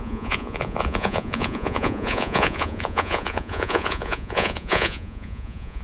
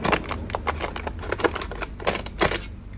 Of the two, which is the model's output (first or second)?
first